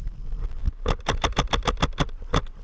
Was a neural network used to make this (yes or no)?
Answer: no